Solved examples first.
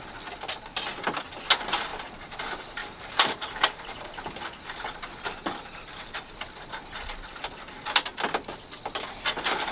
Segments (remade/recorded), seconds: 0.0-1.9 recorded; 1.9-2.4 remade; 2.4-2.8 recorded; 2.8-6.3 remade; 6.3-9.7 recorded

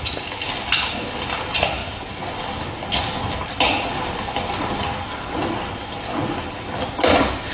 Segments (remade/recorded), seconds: 0.0-7.5 recorded

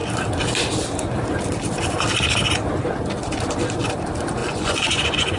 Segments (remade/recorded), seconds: 0.0-4.4 recorded; 4.4-5.4 remade